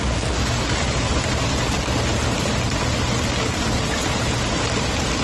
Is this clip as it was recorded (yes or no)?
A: yes